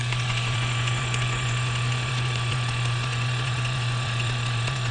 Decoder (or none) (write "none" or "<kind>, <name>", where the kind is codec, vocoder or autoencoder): vocoder, Vocos